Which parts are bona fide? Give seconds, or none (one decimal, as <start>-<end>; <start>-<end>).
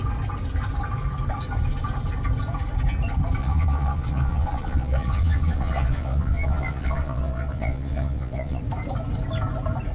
0.0-3.4; 8.6-9.9